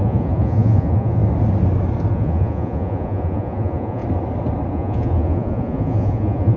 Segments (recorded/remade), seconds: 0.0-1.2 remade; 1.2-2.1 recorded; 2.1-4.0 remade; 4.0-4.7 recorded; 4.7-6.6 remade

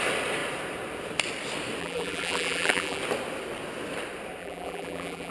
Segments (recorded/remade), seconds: 0.0-1.8 recorded; 1.8-3.0 remade; 3.0-4.4 recorded; 4.4-5.3 remade

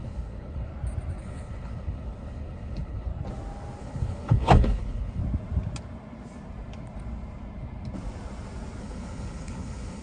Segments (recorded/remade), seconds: 0.0-0.7 remade; 0.7-1.2 recorded; 1.2-3.1 remade; 3.1-3.8 recorded; 3.8-5.2 remade; 5.2-8.8 recorded; 8.8-10.0 remade